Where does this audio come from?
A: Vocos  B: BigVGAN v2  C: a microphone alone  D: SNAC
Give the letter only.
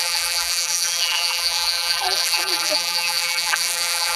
B